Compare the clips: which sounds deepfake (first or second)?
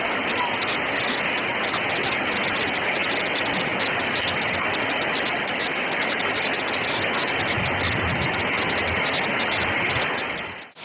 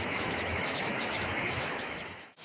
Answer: second